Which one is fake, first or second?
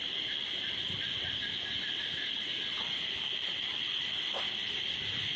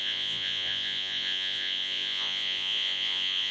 second